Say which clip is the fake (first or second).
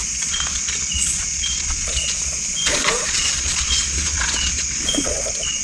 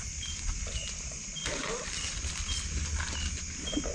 first